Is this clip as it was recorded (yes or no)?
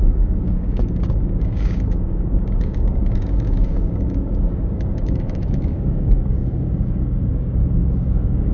no